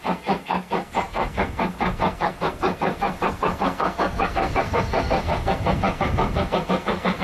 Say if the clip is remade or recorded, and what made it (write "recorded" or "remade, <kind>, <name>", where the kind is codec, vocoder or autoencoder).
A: remade, codec, SNAC